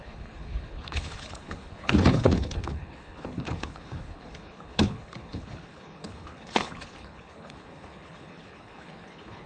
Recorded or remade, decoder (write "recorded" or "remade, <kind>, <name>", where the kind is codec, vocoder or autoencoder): remade, codec, HILCodec